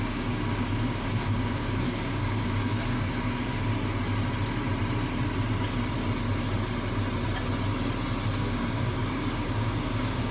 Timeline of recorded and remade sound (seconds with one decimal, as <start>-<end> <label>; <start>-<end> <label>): 0.0-3.6 remade; 3.6-8.4 recorded; 8.4-10.3 remade